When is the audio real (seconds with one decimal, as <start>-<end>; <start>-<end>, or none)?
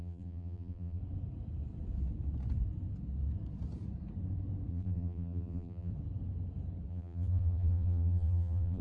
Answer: 1.0-4.7; 5.9-6.9